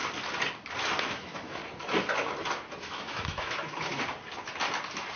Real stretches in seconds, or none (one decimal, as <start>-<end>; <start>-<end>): 0.0-1.0; 1.6-2.8; 3.9-5.2